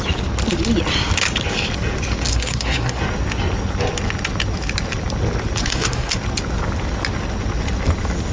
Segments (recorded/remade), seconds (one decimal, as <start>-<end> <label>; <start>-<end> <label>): 0.0-2.3 recorded; 2.3-3.0 remade; 3.0-5.6 recorded; 5.6-6.1 remade; 6.1-8.3 recorded